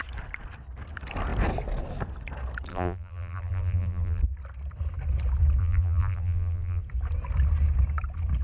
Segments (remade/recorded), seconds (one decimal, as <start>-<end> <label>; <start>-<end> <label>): 0.0-2.7 recorded; 2.7-4.2 remade; 4.2-5.6 recorded; 5.6-6.8 remade; 6.8-8.4 recorded